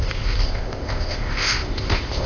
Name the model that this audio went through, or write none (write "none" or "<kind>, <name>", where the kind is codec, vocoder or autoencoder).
codec, ZipCodec